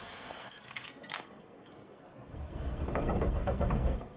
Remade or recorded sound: remade